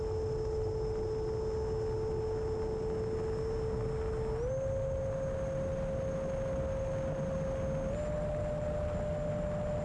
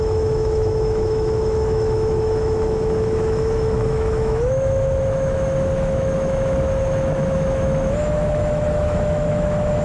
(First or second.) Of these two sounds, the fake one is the second